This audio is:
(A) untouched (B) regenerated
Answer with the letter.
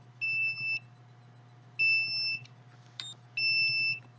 A